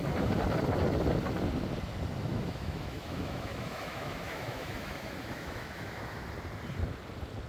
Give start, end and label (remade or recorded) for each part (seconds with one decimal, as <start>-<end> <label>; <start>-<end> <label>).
0.0-2.3 recorded; 2.3-6.2 remade; 6.2-7.5 recorded